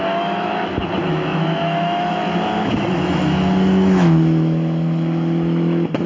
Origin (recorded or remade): remade